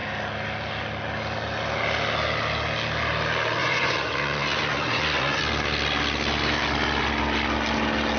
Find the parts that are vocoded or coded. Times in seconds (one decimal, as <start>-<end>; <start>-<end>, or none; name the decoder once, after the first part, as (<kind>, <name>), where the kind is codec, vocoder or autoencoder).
3.6-5.4 (vocoder, Vocos)